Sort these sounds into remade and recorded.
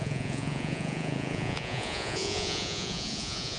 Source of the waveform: remade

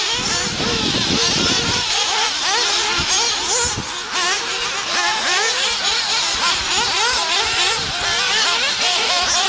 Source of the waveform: recorded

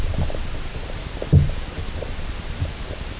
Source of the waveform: recorded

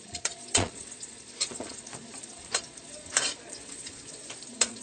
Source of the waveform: remade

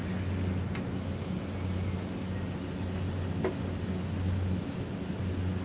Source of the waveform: recorded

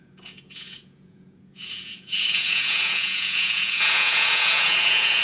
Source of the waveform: remade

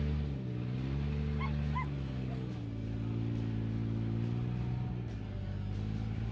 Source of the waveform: recorded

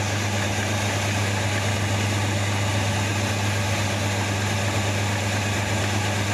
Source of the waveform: recorded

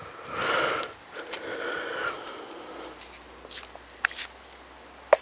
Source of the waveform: recorded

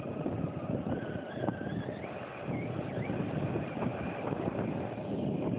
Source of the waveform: recorded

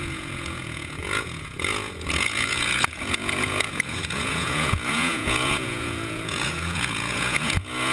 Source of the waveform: remade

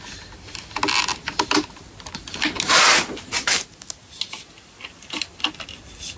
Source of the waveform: recorded